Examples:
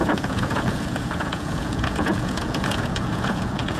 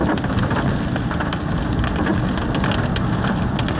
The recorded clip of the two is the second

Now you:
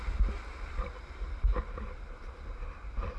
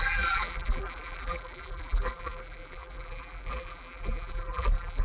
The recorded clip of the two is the first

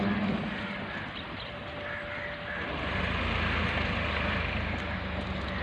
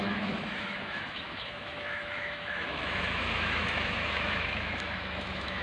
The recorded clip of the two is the first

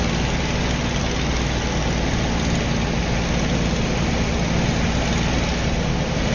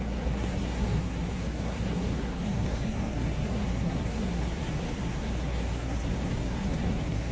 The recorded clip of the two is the first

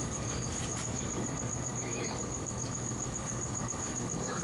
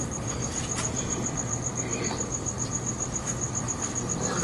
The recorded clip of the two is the second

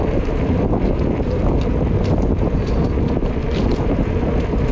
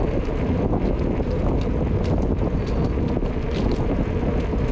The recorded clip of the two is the second